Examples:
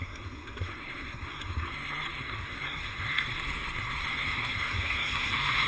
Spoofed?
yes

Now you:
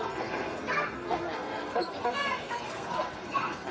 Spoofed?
yes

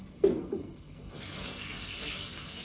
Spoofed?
yes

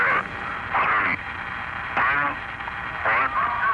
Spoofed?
no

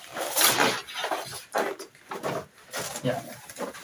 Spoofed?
no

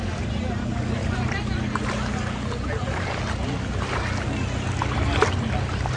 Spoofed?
no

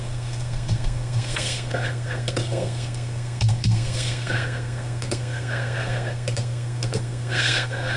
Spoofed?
yes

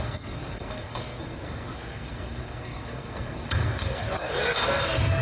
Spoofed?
yes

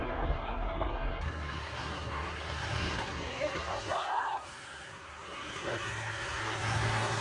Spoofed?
yes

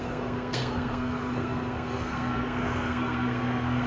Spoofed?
yes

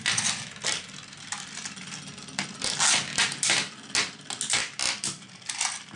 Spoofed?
no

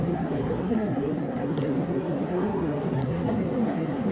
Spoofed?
yes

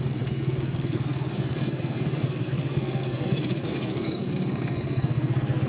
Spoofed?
yes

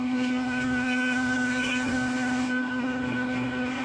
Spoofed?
yes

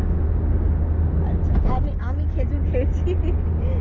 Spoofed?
no